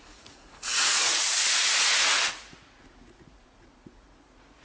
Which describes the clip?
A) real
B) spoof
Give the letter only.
B